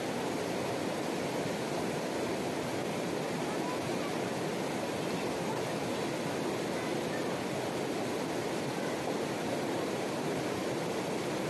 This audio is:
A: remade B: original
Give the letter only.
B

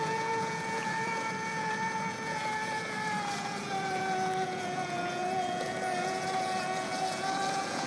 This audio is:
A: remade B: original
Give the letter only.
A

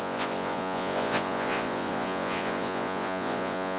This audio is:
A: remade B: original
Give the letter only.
A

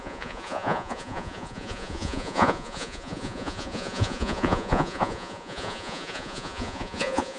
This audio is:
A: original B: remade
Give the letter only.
B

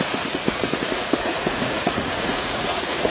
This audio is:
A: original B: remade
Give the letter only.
B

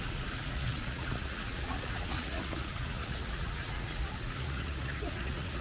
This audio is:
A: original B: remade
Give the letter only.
B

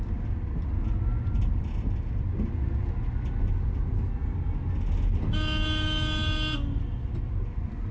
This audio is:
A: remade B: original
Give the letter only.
B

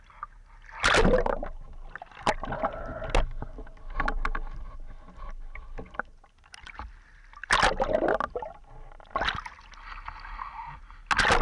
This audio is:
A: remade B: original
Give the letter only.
B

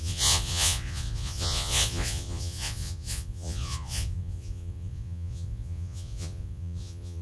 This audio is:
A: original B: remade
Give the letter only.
B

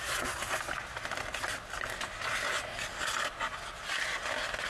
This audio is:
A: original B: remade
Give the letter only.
A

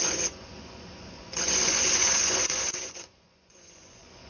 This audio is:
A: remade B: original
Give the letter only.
A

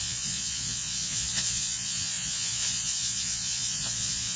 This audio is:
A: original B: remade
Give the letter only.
B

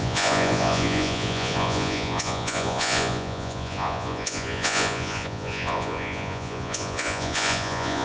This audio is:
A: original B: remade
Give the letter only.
B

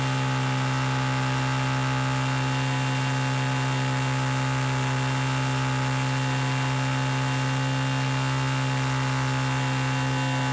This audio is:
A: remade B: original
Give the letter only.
B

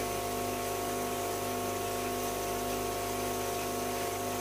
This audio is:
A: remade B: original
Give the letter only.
B